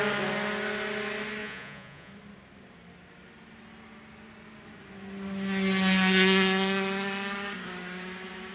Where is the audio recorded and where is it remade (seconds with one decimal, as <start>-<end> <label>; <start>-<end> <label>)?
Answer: 0.0-1.4 recorded; 1.4-2.1 remade; 2.1-8.5 recorded